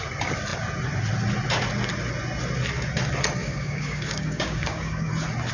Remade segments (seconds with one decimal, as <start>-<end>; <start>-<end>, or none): 3.4-5.1